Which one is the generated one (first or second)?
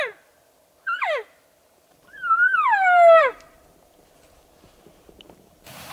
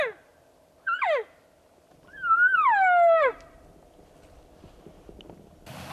first